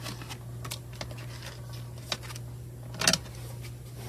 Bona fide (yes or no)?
yes